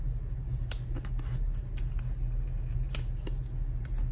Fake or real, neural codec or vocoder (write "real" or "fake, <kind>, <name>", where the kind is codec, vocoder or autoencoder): real